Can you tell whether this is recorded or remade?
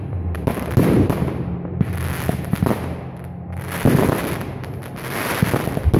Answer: recorded